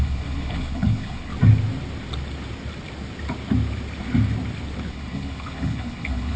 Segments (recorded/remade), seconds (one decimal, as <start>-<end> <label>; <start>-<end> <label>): 0.0-1.3 remade; 1.3-4.9 recorded; 4.9-6.4 remade